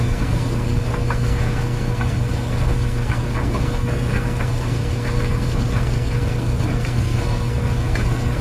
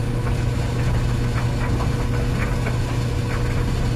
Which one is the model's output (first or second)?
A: first